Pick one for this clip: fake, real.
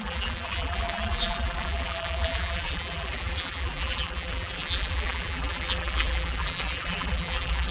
fake